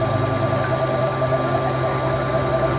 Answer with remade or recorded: recorded